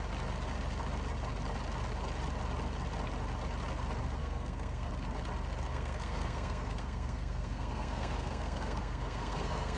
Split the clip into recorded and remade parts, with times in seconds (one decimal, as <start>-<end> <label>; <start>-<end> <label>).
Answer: 0.0-4.2 recorded; 4.2-4.9 remade; 4.9-5.7 recorded; 5.7-9.8 remade